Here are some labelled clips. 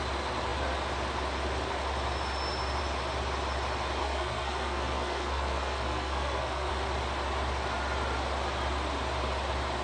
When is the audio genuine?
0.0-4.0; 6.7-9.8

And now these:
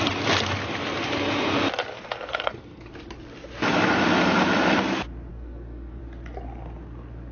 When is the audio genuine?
0.0-1.9; 2.9-5.3; 6.0-7.3

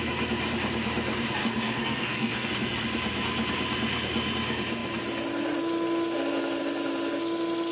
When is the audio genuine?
0.0-1.4; 2.5-7.7